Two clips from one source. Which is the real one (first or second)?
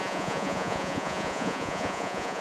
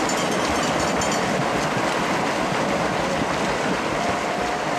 second